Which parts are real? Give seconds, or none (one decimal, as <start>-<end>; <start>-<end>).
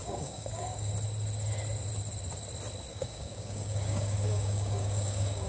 0.9-2.9